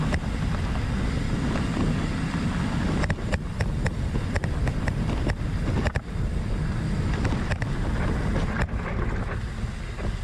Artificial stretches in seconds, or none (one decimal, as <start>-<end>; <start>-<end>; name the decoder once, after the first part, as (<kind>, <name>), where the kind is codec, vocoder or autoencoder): 8.4-8.9 (vocoder, BigVGAN v2)